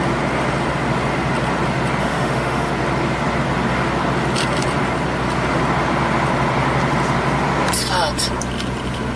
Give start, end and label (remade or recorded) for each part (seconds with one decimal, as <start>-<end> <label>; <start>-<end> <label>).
0.0-2.0 recorded; 2.0-2.7 remade; 2.7-9.2 recorded